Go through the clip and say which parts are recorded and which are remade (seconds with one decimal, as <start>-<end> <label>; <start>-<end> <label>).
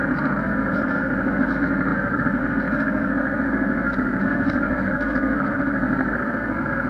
0.0-6.9 remade